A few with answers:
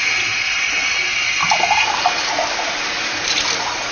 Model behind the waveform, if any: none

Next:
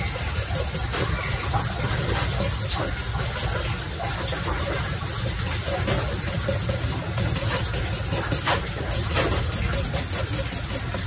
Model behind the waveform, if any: none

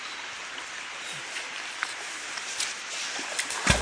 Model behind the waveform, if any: none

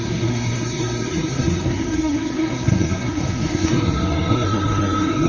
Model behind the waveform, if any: codec, SNAC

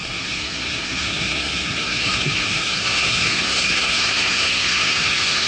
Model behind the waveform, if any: codec, SNAC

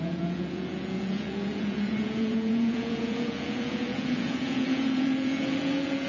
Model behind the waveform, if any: vocoder, Vocos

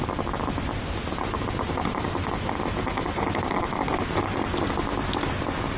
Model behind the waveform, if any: none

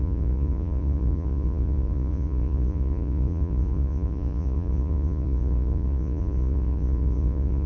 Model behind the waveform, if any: vocoder, Vocos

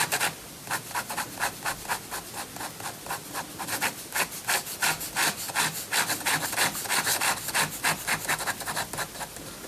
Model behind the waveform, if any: none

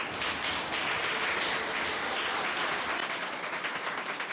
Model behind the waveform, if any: none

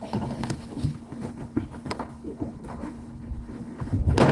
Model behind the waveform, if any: codec, HILCodec